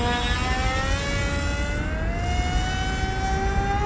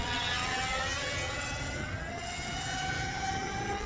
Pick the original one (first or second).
first